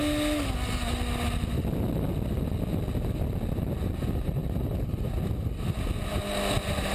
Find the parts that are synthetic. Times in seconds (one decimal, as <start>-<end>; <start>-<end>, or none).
none